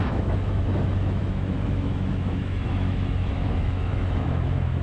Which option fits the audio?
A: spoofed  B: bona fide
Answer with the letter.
A